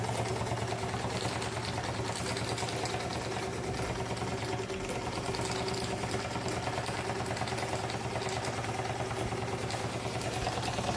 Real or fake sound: real